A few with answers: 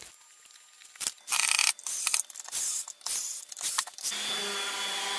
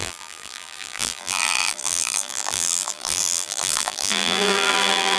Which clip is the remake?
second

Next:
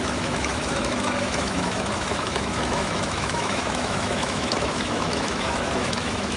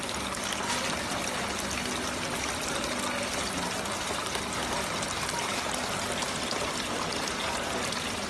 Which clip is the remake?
first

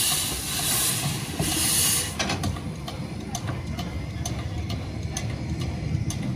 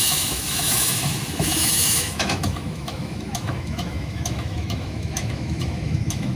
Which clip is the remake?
second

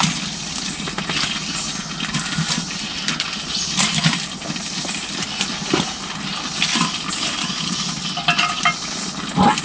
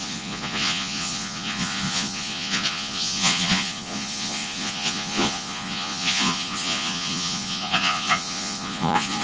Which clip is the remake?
second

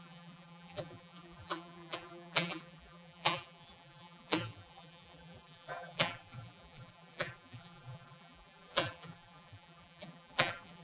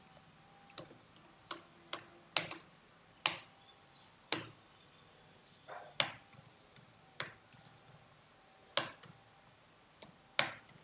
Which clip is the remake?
first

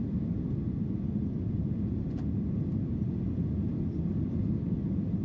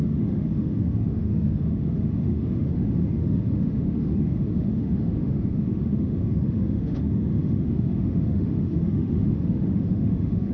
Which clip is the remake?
second